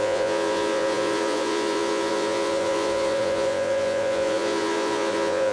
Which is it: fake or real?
fake